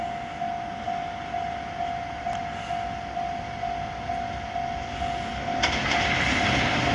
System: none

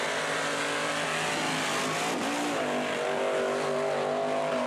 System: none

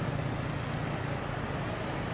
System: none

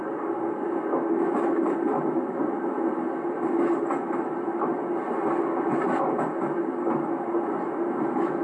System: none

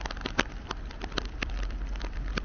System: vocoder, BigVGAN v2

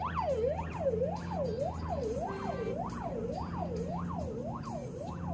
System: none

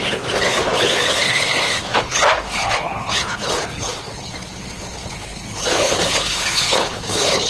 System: codec, HILCodec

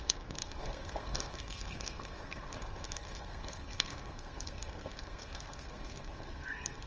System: codec, SNAC